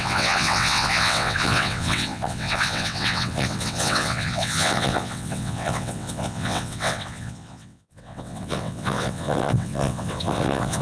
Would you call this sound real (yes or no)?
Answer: no